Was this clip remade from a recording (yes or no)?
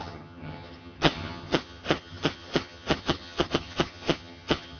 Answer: yes